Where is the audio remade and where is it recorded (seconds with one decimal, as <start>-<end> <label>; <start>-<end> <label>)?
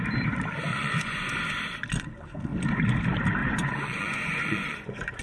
0.0-0.7 recorded; 0.7-1.3 remade; 1.3-3.4 recorded; 3.4-5.2 remade